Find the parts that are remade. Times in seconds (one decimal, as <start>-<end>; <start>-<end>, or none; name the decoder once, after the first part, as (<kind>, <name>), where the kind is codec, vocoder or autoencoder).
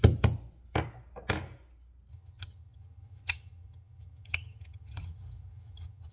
2.1-6.1 (vocoder, HiFi-GAN)